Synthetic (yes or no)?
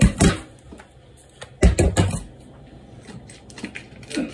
no